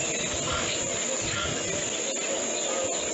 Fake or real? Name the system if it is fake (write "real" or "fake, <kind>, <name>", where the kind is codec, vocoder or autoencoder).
real